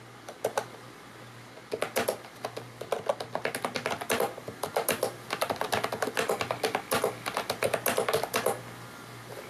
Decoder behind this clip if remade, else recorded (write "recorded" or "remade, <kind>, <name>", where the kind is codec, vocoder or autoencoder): recorded